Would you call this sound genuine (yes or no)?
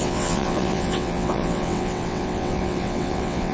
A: no